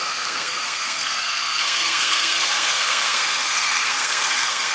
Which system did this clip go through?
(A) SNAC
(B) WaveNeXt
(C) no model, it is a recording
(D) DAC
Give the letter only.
A